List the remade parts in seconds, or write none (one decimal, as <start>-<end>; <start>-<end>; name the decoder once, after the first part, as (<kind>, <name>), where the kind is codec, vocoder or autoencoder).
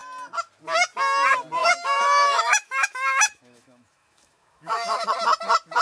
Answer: 1.6-5.1 (autoencoder, DAC-VAE)